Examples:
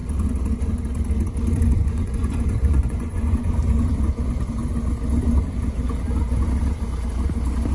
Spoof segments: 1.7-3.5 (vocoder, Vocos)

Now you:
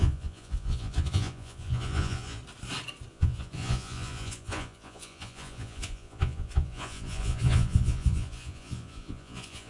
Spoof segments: 0.0-2.4 (vocoder, Vocos); 3.1-9.7

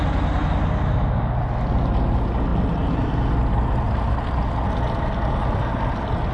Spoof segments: none

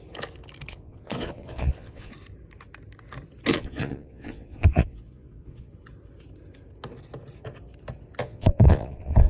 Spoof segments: 0.7-2.1 (vocoder, Vocos); 3.5-5.7; 8.2-9.3

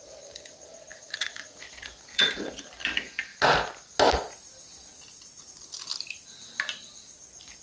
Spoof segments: 0.9-2.4 (vocoder, Vocos)

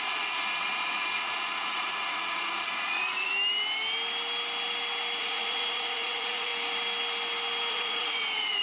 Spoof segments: 0.0-3.3 (vocoder, Vocos); 5.2-6.5; 7.7-8.6